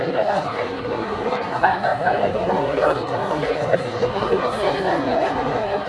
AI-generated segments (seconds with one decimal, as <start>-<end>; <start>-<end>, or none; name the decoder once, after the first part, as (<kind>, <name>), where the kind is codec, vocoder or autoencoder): 0.0-5.9 (codec, SNAC)